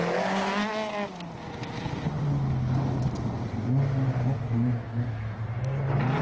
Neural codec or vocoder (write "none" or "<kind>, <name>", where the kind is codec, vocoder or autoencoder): none